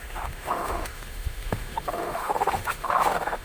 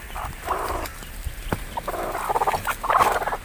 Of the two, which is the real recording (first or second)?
second